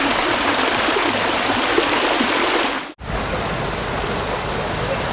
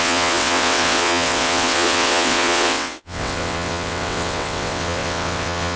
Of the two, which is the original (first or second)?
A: first